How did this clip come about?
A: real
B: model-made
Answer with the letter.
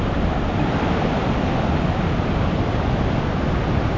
A